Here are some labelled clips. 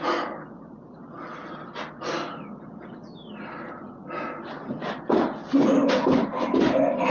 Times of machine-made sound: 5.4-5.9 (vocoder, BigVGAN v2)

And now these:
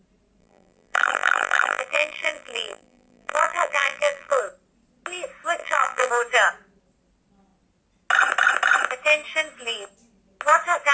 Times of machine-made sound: 0.4-4.4 (vocoder, BigVGAN v2); 5.6-6.1

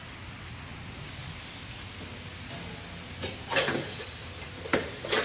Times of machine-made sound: 0.0-0.7 (vocoder, BigVGAN v2); 3.6-5.2

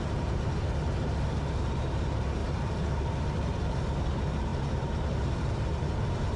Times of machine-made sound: 0.0-6.4 (vocoder, BigVGAN v2)

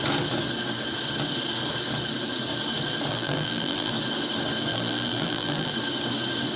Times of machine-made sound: 3.1-3.9 (vocoder, BigVGAN v2); 4.7-5.7

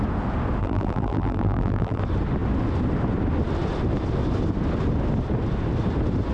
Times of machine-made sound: 0.6-2.0 (vocoder, BigVGAN v2)

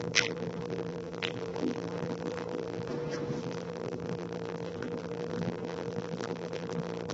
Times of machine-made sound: 0.0-2.9 (vocoder, BigVGAN v2); 3.4-7.1